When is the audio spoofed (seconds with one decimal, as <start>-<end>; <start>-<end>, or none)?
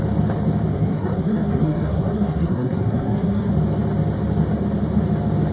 0.7-3.5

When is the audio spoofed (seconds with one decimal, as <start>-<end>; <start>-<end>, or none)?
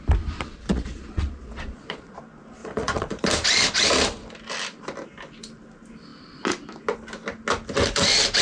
0.7-2.2; 2.6-3.3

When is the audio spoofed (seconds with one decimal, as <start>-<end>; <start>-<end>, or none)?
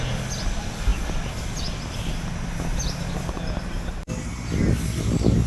none